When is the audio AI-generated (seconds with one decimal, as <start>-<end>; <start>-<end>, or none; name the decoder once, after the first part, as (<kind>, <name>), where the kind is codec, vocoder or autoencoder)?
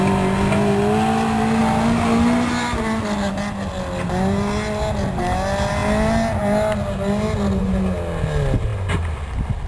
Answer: none